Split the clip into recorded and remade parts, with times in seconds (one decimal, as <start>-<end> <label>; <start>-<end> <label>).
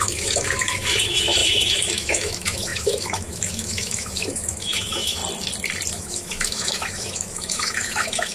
0.0-5.2 remade; 5.2-5.9 recorded; 5.9-8.3 remade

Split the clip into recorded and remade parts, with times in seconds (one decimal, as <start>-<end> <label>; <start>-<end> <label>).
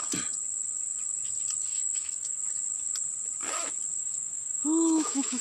0.0-1.7 recorded; 1.7-2.4 remade; 2.4-4.0 recorded; 4.0-5.4 remade